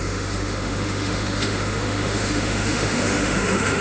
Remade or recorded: remade